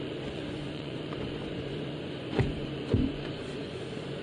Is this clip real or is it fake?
fake